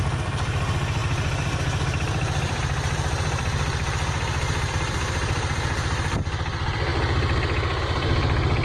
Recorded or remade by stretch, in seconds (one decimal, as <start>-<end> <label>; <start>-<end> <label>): 0.0-6.9 remade; 6.9-7.8 recorded; 7.8-8.6 remade